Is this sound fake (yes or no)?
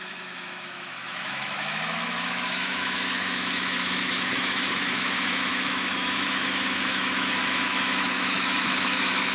yes